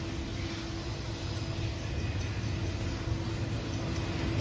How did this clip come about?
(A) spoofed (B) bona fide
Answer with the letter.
B